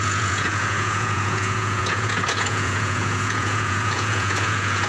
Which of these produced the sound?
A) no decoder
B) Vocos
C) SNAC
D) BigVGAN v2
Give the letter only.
B